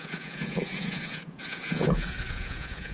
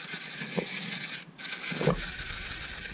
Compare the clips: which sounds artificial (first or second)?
first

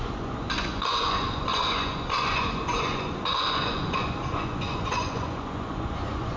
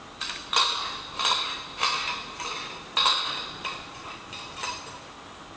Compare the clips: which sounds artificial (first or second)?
first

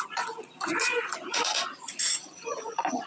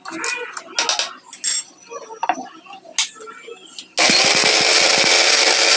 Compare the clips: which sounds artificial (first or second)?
first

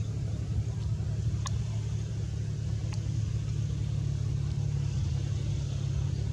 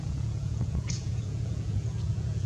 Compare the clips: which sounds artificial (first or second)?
second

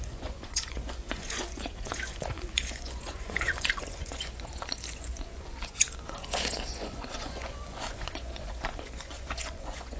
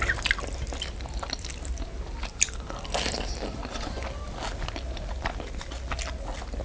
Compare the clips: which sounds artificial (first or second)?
first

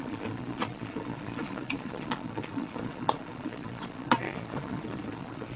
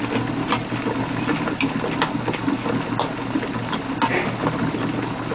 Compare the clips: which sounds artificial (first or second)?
first